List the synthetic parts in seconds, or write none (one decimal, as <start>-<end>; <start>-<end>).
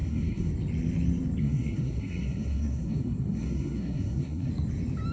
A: 0.0-0.5; 1.4-4.5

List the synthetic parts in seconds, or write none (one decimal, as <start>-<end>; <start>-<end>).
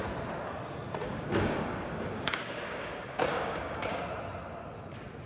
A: 1.0-4.0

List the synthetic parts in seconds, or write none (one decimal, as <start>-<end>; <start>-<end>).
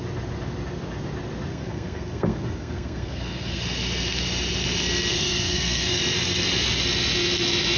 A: 1.5-3.6; 5.1-6.0